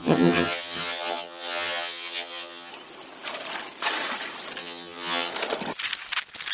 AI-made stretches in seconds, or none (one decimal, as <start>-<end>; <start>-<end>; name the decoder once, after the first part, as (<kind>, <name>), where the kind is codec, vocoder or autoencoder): 0.0-2.7 (vocoder, HiFi-GAN); 4.6-5.3